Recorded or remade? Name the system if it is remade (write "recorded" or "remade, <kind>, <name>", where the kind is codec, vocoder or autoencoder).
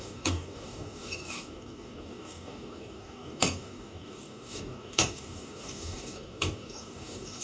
remade, codec, DAC